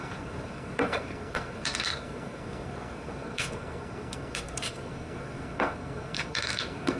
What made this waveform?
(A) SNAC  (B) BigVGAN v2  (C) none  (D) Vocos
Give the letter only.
A